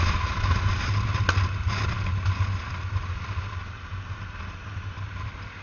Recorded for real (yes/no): yes